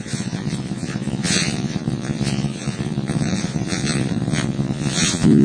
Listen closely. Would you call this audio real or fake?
fake